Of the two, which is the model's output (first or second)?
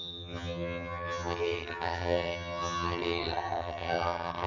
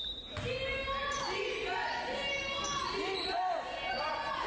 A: first